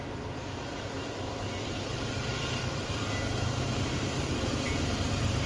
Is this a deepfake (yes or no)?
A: yes